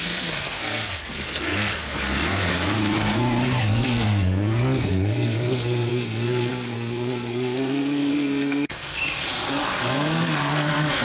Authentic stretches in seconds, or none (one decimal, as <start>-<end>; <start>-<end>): 2.5-3.6; 9.0-9.5